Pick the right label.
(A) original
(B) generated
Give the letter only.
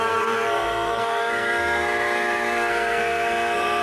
B